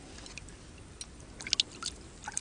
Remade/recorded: recorded